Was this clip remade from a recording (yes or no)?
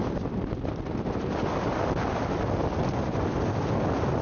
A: no